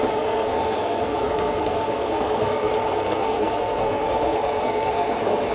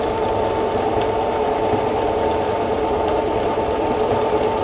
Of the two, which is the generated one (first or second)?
first